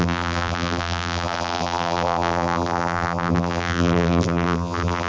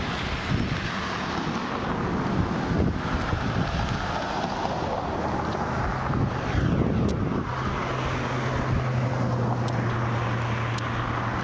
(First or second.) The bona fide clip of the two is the second